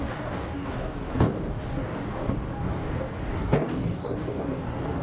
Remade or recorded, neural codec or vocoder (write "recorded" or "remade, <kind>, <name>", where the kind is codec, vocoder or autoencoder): remade, codec, DAC